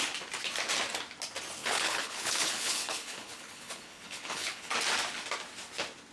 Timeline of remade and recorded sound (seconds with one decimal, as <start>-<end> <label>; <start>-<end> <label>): 0.0-1.6 recorded; 1.6-4.7 remade; 4.7-6.1 recorded